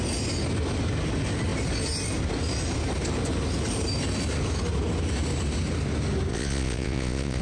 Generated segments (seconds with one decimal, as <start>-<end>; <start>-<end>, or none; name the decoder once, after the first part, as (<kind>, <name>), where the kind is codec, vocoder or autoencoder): 6.3-7.4 (vocoder, Vocos)